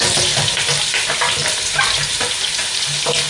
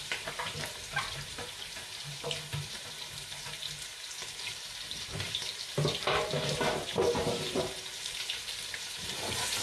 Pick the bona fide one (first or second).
first